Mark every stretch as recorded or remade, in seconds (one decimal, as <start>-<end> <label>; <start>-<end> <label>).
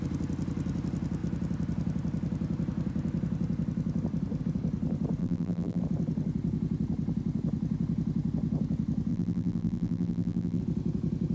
0.0-5.2 recorded; 5.2-5.8 remade; 5.8-9.1 recorded; 9.1-10.6 remade; 10.6-11.3 recorded